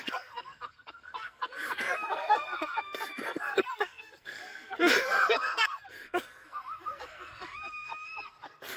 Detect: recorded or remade remade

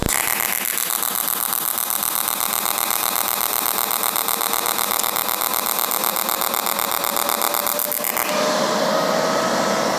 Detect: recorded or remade recorded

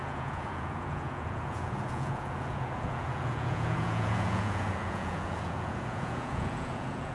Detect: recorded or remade remade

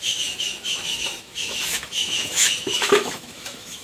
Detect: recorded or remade remade